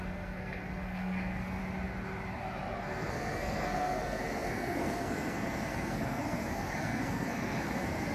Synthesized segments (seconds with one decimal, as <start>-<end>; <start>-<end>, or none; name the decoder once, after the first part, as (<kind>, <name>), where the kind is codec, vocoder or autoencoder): 0.0-1.6 (codec, SNAC); 2.8-8.1